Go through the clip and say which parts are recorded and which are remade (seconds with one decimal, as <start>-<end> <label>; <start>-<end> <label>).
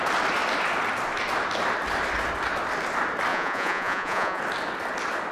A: 0.0-3.3 recorded; 3.3-4.4 remade; 4.4-5.3 recorded